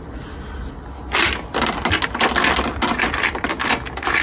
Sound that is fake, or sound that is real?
real